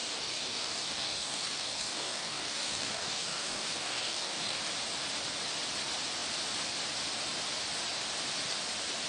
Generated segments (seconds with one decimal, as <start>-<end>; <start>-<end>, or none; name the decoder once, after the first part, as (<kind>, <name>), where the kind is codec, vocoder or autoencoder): 0.0-4.6 (codec, DAC)